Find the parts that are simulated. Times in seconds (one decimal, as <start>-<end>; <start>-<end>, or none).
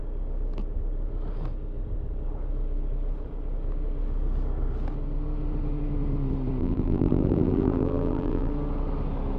6.6-8.5